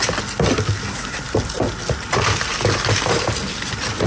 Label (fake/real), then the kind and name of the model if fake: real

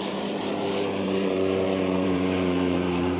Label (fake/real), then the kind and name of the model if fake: fake, vocoder, BigVGAN v2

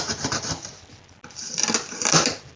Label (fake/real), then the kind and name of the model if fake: real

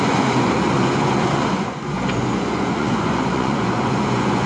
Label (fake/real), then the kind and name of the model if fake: fake, vocoder, Vocos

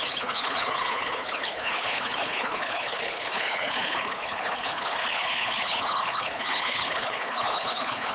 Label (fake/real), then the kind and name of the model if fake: fake, codec, HILCodec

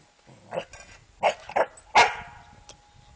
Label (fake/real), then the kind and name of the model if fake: real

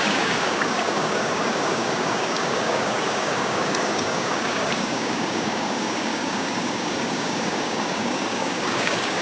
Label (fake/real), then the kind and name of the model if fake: fake, codec, DAC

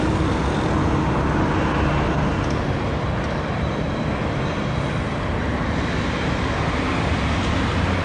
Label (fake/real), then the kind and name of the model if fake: real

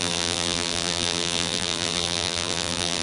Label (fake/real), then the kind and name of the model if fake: fake, vocoder, BigVGAN v2